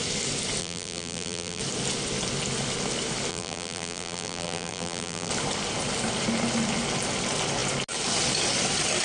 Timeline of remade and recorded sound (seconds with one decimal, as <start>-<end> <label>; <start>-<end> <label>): 0.0-0.6 recorded; 0.6-1.6 remade; 1.6-3.3 recorded; 3.3-5.3 remade; 5.3-9.0 recorded